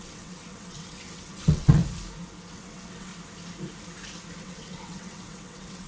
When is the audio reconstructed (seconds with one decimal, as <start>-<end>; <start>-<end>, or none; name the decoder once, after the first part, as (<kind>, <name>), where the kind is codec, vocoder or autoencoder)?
0.0-1.8 (vocoder, WaveNeXt); 2.5-3.1; 4.4-5.9